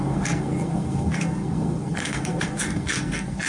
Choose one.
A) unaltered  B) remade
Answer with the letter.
B